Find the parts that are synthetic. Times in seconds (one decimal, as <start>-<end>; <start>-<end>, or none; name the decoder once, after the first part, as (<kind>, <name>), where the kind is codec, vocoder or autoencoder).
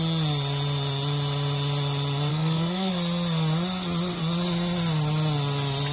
2.3-2.9 (codec, SNAC)